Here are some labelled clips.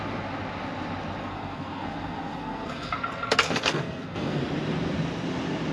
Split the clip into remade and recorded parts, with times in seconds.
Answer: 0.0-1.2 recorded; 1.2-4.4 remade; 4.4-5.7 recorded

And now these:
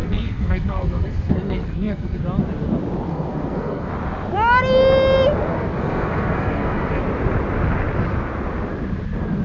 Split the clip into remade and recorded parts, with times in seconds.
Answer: 0.0-2.2 remade; 2.2-3.1 recorded; 3.1-3.9 remade; 3.9-5.5 recorded; 5.5-7.0 remade; 7.0-9.4 recorded

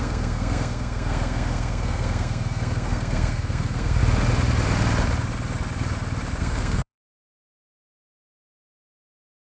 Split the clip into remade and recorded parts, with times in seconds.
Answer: 0.0-4.0 remade; 4.0-6.4 recorded; 6.4-9.5 remade

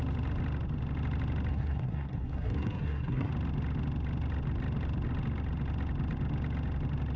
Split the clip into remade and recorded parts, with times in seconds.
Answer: 0.0-1.5 recorded; 1.5-3.3 remade; 3.3-7.2 recorded